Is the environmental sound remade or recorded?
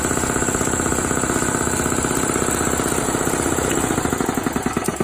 recorded